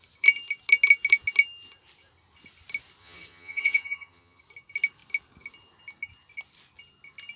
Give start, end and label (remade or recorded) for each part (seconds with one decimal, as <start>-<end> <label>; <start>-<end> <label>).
0.0-3.0 recorded; 3.0-4.4 remade; 4.4-7.4 recorded

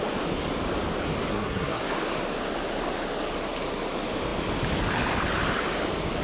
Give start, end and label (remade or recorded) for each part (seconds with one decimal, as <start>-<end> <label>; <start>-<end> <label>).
0.0-1.3 recorded; 1.3-1.8 remade; 1.8-6.2 recorded

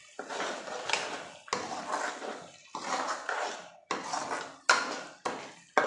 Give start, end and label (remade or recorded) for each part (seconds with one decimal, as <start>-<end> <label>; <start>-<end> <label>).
0.0-5.9 recorded

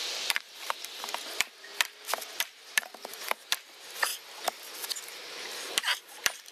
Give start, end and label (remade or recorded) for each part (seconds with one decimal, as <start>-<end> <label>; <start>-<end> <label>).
0.0-1.7 remade; 1.7-2.4 recorded; 2.4-4.1 remade; 4.1-5.0 recorded; 5.0-6.5 remade

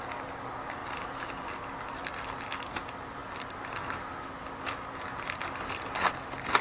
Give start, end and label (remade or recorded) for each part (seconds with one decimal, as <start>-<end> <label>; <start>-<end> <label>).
0.0-6.6 recorded

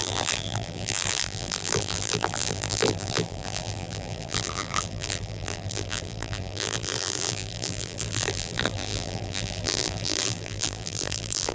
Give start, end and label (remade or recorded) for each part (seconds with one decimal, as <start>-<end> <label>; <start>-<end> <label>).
0.0-11.5 remade

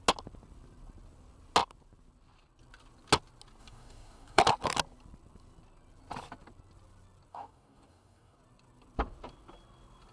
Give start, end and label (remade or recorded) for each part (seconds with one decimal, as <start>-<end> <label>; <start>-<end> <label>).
0.0-3.6 recorded; 3.6-4.4 remade; 4.4-7.3 recorded; 7.3-8.4 remade; 8.4-10.1 recorded